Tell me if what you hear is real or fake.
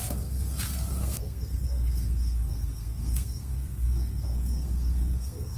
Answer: fake